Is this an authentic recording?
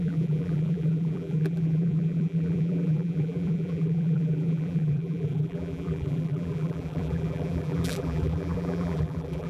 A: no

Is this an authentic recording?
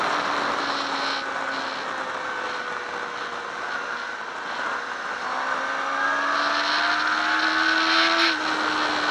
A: yes